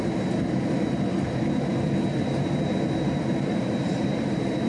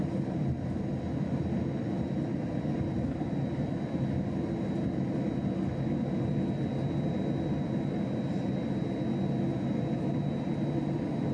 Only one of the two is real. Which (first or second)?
second